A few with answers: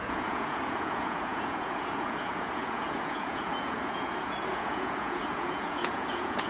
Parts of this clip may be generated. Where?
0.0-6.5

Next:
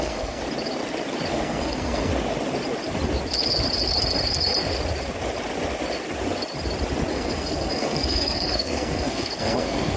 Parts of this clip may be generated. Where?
0.0-0.4; 1.3-2.1; 7.1-10.0

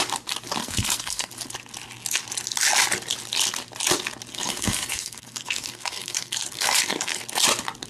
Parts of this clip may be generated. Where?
0.6-1.3; 4.3-7.2

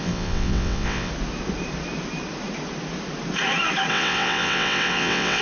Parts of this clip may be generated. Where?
0.0-1.1; 3.9-5.4

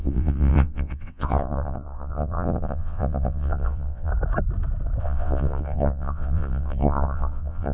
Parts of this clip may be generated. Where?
0.0-4.1; 5.0-7.7

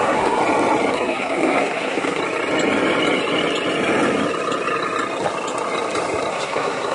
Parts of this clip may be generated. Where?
0.0-0.4; 0.9-2.2; 6.3-6.9

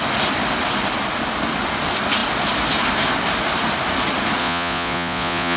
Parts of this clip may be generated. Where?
4.4-5.6